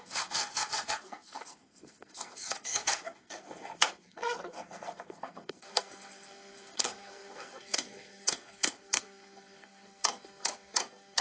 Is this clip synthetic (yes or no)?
yes